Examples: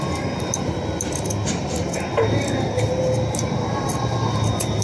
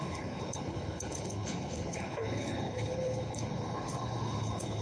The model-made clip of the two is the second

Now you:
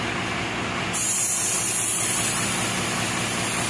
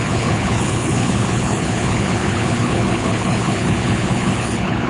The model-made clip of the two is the second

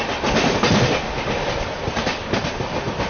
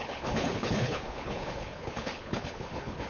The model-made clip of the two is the second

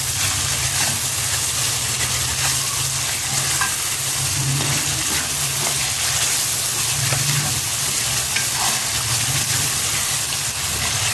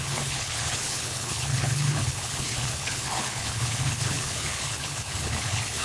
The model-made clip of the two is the second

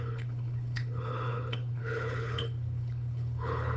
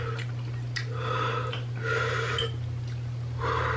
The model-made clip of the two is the first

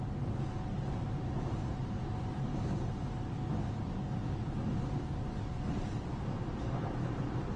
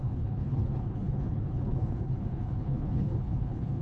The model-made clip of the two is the second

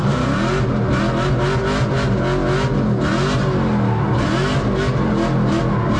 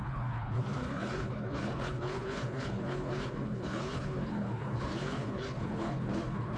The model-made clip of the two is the second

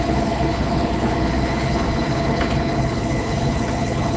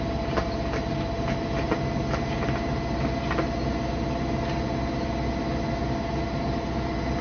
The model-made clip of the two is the first